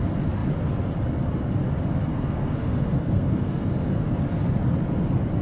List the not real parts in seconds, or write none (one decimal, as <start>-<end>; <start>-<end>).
2.1-3.7